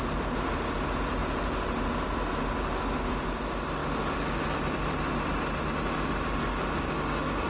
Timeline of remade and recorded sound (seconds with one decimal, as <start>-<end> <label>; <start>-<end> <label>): 0.0-6.5 recorded; 6.5-7.5 remade